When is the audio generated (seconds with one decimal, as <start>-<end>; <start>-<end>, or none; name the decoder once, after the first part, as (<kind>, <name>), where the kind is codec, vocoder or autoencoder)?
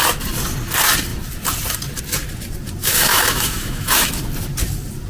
2.8-4.1 (autoencoder, DAC-VAE)